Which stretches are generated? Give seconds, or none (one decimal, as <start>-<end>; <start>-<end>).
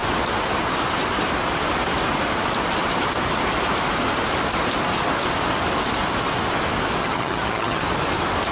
7.0-7.8